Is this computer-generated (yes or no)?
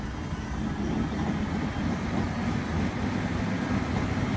no